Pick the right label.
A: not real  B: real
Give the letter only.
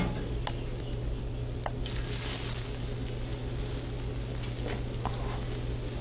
B